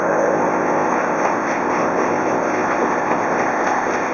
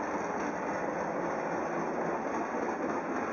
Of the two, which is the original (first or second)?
second